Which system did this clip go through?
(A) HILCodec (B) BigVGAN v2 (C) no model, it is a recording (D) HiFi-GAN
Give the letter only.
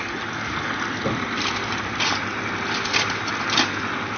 C